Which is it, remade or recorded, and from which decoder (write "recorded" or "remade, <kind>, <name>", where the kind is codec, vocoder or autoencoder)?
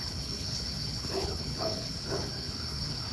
remade, codec, HILCodec